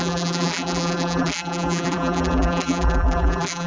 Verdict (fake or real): fake